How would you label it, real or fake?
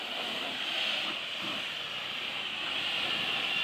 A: fake